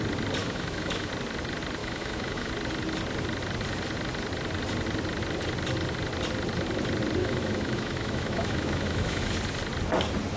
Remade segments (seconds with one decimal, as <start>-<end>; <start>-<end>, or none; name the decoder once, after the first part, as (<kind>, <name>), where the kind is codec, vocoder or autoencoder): 0.4-1.1 (autoencoder, DAC-VAE); 1.8-2.5; 7.2-9.3

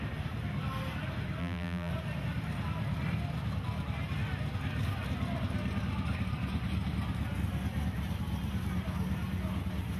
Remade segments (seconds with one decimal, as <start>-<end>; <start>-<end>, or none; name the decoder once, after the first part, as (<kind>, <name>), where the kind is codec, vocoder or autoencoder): 1.4-1.9 (vocoder, BigVGAN v2)